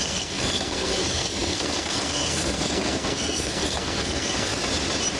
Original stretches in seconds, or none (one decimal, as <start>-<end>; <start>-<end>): 4.5-5.2